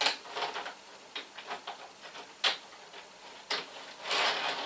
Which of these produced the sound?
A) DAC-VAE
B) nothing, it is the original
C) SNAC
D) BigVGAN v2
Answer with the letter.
B